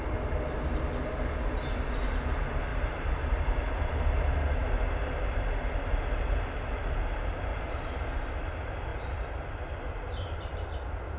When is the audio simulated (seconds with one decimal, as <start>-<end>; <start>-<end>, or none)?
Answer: 2.7-4.3; 7.5-8.2; 8.9-9.5